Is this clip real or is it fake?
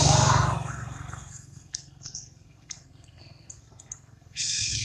fake